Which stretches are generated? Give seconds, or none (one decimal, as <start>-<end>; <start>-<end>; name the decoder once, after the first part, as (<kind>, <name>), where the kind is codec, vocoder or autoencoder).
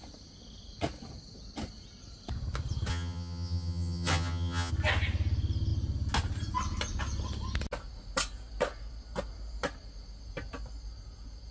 2.9-4.7 (vocoder, HiFi-GAN)